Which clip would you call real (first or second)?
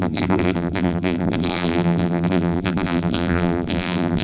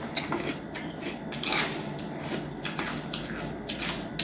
second